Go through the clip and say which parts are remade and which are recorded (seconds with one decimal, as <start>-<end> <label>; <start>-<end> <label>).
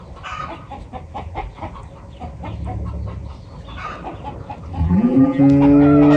0.0-4.8 recorded; 4.8-5.4 remade; 5.4-6.2 recorded